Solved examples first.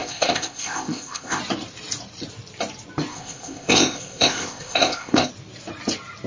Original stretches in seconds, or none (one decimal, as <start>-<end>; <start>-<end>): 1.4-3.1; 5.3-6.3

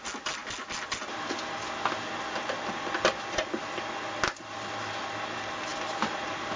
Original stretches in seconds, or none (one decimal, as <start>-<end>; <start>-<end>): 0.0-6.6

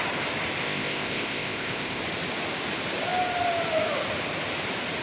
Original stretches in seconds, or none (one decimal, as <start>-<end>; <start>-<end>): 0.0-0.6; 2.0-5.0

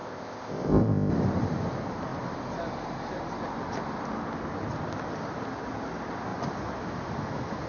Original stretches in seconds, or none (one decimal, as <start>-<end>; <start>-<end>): 1.1-7.7

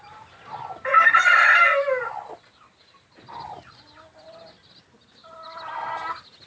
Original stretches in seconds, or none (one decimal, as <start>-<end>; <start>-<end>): 0.0-6.5